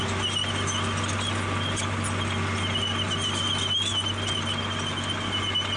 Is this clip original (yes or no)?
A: yes